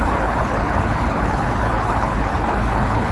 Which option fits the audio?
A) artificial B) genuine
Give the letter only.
A